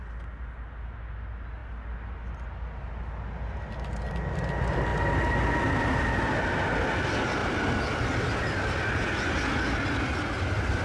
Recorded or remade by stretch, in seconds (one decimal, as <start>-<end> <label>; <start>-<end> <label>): 0.0-10.8 recorded